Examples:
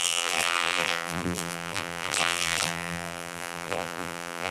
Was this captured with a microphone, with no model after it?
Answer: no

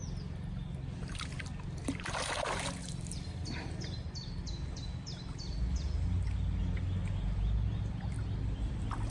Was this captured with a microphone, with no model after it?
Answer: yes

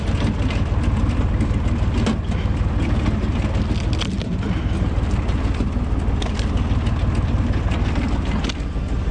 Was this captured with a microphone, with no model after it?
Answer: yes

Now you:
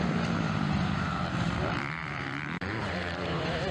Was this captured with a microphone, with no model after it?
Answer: no